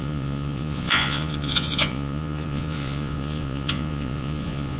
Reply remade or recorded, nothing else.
remade